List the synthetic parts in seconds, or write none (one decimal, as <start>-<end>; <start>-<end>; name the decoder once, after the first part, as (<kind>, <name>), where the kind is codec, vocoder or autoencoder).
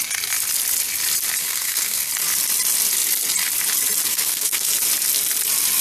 1.4-2.1 (codec, SNAC); 4.1-4.7